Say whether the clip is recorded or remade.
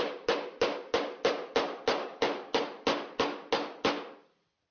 recorded